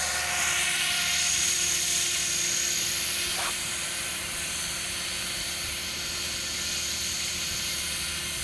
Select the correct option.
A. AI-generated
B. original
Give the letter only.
B